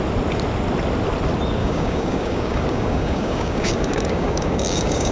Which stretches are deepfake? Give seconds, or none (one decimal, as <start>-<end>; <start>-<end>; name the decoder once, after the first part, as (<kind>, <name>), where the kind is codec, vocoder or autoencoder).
1.6-5.1 (codec, DAC)